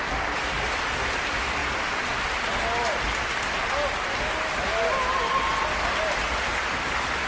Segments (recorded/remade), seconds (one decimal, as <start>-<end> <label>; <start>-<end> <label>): 0.0-7.3 recorded